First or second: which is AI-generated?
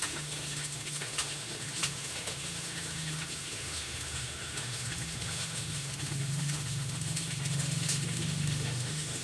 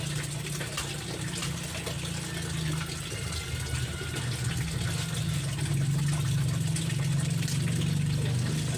first